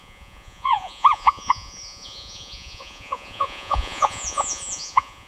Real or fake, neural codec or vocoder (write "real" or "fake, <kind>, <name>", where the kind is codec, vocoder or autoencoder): fake, vocoder, Vocos